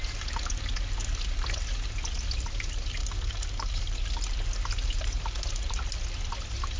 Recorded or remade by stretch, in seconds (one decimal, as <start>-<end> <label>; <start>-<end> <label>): 0.0-3.0 recorded; 3.0-3.8 remade; 3.8-6.8 recorded